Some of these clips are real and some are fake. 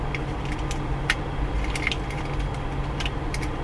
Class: real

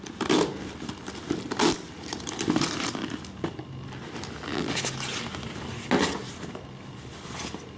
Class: real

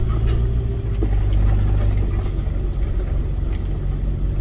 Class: real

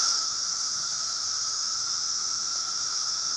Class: fake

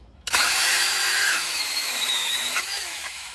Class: fake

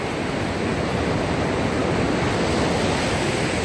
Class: real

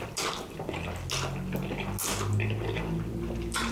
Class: real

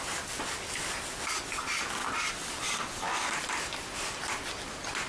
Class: real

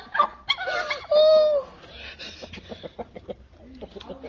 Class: real